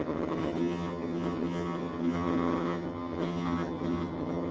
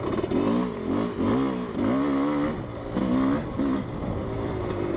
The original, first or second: second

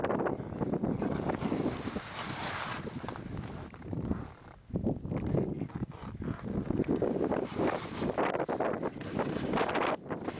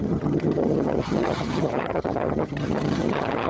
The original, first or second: first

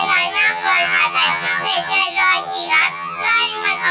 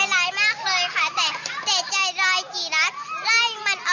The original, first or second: second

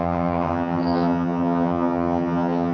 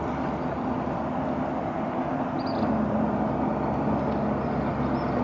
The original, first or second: second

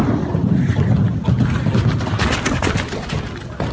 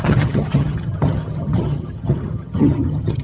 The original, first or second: first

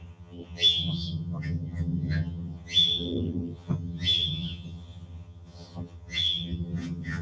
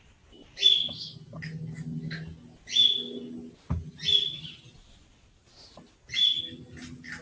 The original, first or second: second